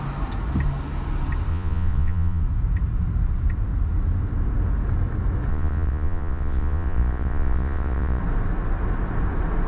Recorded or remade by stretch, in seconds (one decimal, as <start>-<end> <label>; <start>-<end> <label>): 0.0-1.5 recorded; 1.5-2.4 remade; 2.4-5.5 recorded; 5.5-8.2 remade; 8.2-9.7 recorded